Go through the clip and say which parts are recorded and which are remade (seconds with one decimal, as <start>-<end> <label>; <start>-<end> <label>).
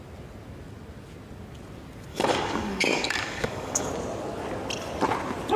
0.0-2.1 recorded; 2.1-3.9 remade; 3.9-5.6 recorded